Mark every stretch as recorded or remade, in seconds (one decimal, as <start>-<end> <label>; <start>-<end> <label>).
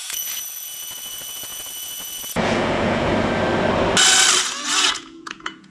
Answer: 0.0-3.1 remade; 3.1-4.8 recorded; 4.8-5.7 remade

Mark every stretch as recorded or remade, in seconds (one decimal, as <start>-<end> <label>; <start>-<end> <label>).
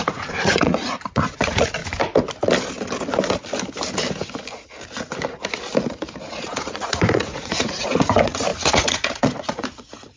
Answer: 0.0-1.8 remade; 1.8-6.3 recorded; 6.3-10.2 remade